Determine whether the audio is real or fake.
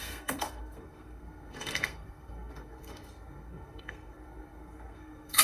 fake